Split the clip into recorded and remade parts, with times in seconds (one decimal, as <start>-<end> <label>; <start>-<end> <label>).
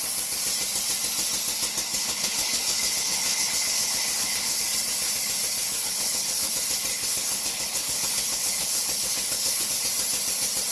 0.0-1.9 recorded; 1.9-4.6 remade; 4.6-5.6 recorded; 5.6-6.5 remade; 6.5-6.9 recorded; 6.9-9.7 remade; 9.7-10.7 recorded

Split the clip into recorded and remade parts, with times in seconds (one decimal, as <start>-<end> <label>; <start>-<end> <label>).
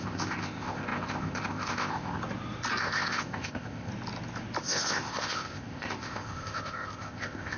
0.0-2.2 remade; 2.2-2.8 recorded; 2.8-3.9 remade; 3.9-4.6 recorded; 4.6-7.6 remade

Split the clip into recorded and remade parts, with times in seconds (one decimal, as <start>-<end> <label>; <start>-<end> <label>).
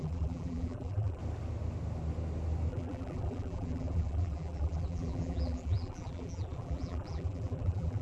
0.0-1.2 remade; 1.2-2.7 recorded; 2.7-8.0 remade